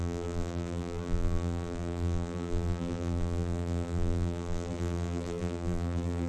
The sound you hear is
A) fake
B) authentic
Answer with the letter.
A